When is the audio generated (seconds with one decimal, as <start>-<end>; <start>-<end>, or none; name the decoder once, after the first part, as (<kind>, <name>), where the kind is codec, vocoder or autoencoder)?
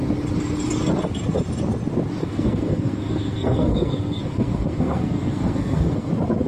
2.2-6.1 (codec, SNAC)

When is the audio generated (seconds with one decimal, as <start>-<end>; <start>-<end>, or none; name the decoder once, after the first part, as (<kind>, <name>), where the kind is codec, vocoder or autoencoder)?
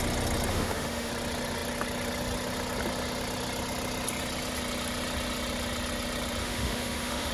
0.5-1.1 (autoencoder, DAC-VAE); 6.4-7.3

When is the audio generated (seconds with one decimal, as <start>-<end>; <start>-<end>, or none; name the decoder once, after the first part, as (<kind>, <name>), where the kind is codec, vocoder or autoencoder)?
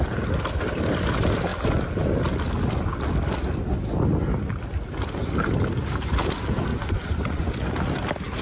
6.7-7.5 (vocoder, Vocos)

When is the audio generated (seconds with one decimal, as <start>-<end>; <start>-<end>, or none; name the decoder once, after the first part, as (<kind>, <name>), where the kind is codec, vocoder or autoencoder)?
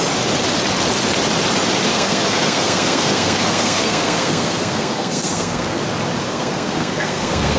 1.9-5.8 (codec, SNAC); 6.3-7.6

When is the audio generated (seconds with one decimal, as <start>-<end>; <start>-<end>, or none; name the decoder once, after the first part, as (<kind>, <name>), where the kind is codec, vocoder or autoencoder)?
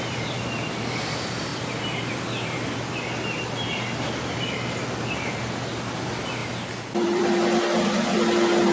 6.4-7.2 (vocoder, BigVGAN v2)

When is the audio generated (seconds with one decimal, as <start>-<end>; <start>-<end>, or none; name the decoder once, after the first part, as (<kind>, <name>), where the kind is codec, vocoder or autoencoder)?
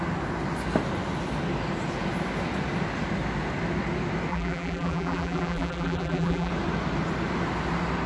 4.3-6.5 (vocoder, BigVGAN v2)